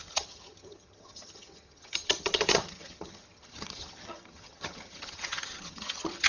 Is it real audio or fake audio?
fake